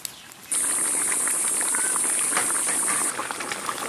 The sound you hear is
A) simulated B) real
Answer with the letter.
B